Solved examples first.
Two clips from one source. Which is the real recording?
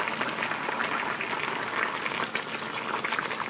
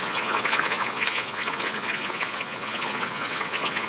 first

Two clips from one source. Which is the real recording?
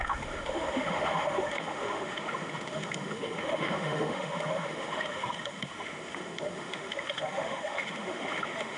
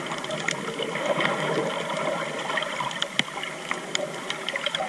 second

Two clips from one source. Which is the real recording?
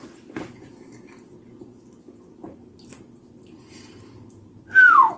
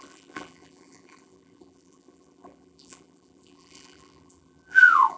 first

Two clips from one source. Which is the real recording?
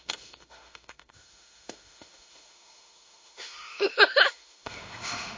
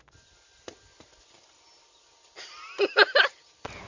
second